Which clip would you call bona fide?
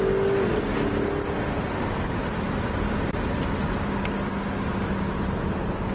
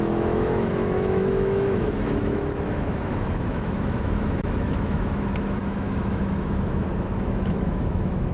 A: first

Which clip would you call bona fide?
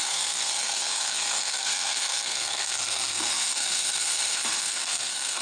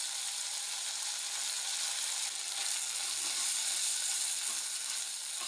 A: second